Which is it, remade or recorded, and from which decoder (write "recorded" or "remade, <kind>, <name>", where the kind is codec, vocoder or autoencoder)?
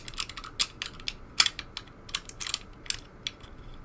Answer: recorded